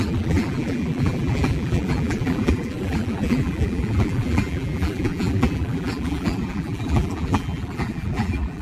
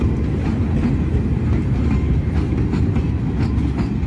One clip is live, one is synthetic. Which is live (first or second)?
second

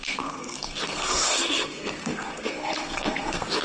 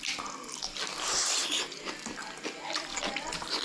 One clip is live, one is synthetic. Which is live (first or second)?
second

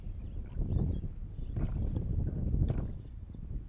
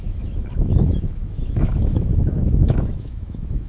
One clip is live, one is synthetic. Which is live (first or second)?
first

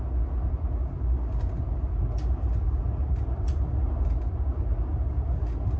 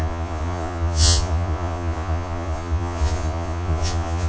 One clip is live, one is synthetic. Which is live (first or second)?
first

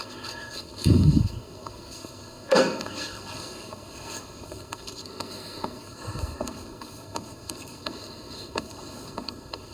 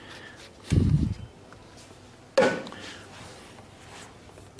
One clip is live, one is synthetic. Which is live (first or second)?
second